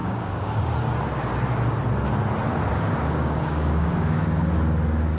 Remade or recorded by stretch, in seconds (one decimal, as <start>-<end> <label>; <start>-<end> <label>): 0.0-0.6 remade; 0.6-2.7 recorded; 2.7-4.4 remade; 4.4-5.2 recorded